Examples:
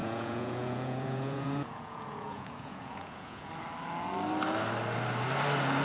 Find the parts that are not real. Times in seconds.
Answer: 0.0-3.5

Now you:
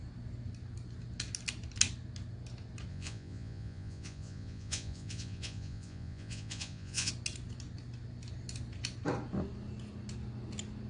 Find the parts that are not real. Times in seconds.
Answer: 2.9-7.1

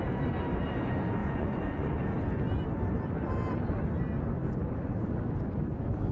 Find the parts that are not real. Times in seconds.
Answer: 1.2-2.0

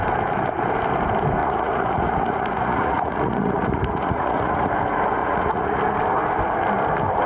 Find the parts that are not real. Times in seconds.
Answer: 1.4-4.7; 5.2-5.8

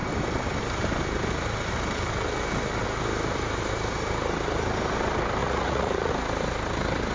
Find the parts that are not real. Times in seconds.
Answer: 5.4-6.1

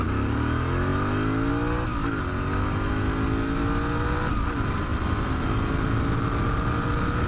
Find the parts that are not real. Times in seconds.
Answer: none

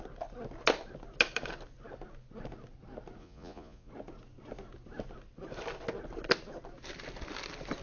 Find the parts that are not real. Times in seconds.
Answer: 3.2-3.9

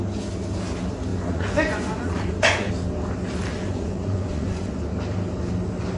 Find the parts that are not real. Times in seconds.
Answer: 1.1-2.7; 3.5-4.7